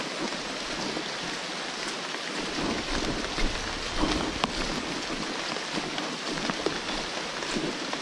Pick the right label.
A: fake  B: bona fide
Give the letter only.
B